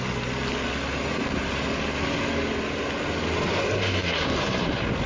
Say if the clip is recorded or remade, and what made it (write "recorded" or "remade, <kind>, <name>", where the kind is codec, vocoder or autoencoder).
recorded